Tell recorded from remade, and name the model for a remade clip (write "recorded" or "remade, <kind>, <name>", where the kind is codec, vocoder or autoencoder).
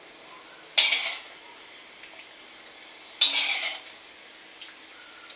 recorded